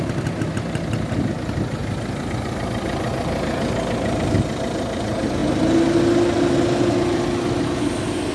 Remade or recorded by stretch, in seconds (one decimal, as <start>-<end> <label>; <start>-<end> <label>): 0.0-8.3 recorded